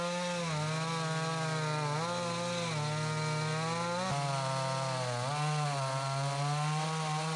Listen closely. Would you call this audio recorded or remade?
recorded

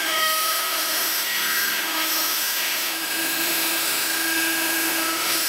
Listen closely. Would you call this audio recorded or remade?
remade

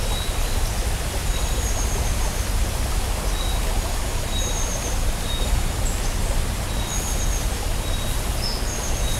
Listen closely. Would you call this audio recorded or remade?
recorded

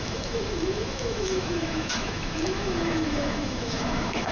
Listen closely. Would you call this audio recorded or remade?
remade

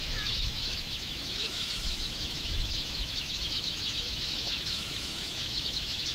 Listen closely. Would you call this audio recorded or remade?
remade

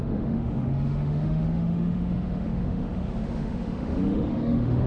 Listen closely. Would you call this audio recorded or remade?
remade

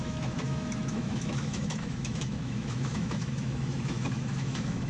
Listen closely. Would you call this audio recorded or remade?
remade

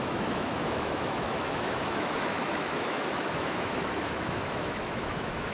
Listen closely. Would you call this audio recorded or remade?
remade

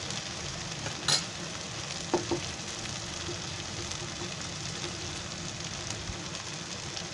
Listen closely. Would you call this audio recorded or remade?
recorded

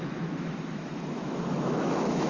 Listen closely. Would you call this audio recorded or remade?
remade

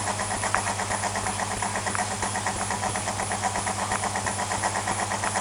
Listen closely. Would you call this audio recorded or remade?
recorded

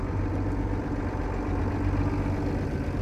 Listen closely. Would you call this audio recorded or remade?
recorded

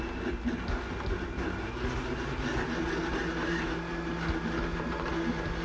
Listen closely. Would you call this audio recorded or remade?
recorded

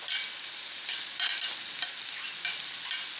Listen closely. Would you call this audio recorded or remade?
recorded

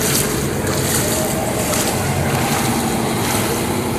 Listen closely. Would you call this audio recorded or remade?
recorded